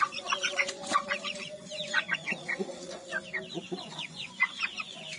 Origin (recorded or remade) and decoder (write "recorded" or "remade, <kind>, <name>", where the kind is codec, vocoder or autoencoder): remade, vocoder, Vocos